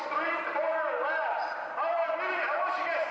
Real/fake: real